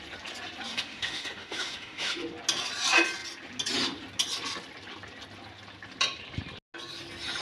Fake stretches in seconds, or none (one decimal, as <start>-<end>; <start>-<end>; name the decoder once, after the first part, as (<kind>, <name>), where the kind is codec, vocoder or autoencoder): 0.7-2.3 (autoencoder, DAC-VAE)